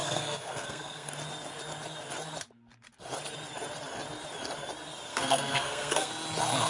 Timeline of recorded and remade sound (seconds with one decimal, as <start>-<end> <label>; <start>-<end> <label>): 0.0-1.1 remade; 1.1-5.1 recorded; 5.1-6.1 remade; 6.1-6.7 recorded